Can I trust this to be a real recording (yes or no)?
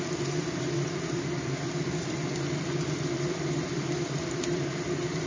no